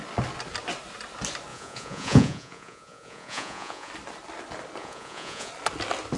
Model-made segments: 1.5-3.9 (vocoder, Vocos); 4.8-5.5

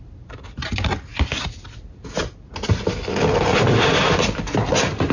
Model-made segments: none

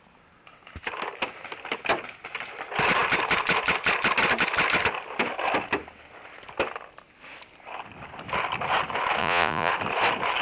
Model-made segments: 9.2-9.7 (vocoder, Vocos)